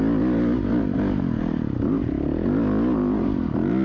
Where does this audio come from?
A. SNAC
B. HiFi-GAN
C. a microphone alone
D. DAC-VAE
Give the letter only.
C